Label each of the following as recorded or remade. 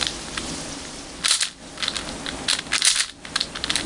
recorded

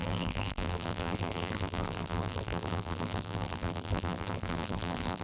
remade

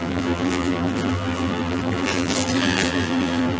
remade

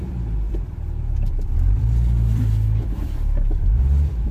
remade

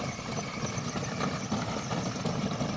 recorded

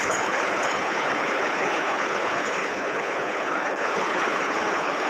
remade